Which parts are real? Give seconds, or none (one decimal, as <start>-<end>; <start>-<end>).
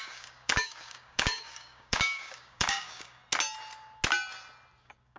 3.2-4.8